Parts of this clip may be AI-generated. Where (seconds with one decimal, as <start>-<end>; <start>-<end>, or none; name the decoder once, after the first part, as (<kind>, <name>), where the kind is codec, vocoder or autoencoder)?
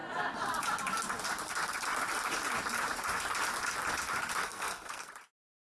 4.4-5.1 (codec, SNAC)